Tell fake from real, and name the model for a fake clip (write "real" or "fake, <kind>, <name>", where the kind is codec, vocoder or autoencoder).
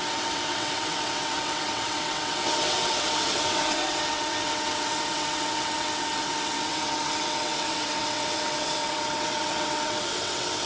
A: fake, vocoder, WaveNeXt